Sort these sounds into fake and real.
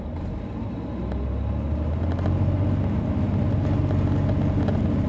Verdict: real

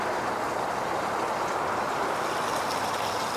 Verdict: real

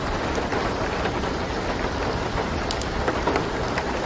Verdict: real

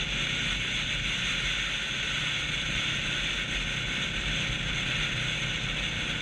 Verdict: real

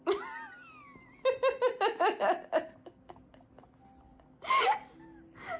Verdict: real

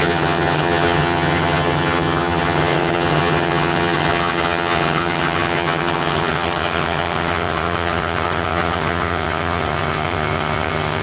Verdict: fake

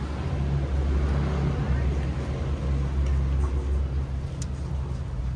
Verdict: real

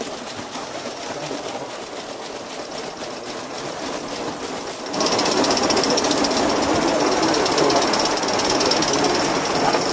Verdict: real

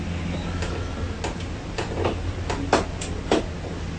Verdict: real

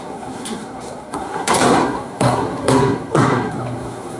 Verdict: fake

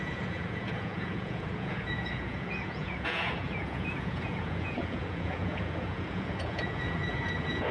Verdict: fake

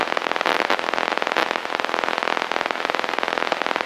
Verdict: real